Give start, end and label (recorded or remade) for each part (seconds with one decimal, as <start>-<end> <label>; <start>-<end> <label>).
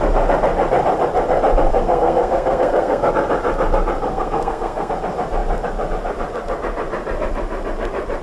0.0-1.7 recorded; 1.7-3.1 remade; 3.1-4.1 recorded; 4.1-4.9 remade; 4.9-8.2 recorded